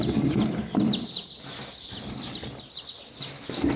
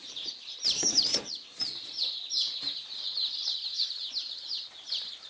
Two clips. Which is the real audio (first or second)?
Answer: first